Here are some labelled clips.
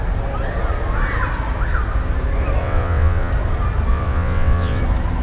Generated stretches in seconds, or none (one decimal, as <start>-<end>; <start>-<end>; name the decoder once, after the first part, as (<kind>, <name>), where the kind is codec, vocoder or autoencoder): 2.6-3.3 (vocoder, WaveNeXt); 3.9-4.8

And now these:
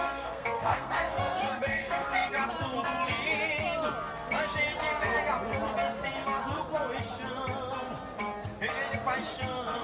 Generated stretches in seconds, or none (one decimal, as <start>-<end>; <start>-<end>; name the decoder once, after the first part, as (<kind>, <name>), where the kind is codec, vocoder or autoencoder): 0.0-2.3 (codec, SNAC)

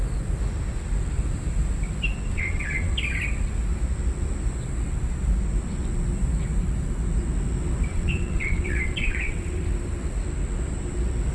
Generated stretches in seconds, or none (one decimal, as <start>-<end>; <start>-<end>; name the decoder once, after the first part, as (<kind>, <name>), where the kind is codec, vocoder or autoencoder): 2.3-2.9 (vocoder, WaveNeXt); 7.9-9.7

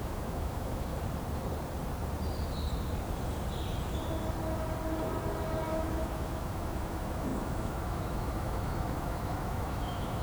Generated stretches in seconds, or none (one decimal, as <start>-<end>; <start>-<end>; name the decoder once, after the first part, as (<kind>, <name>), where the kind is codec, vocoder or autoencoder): 0.0-0.9 (autoencoder, DAC-VAE); 5.7-10.2